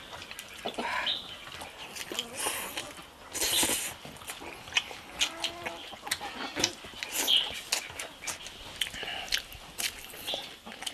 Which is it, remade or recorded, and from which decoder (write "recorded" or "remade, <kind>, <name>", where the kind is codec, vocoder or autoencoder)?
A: recorded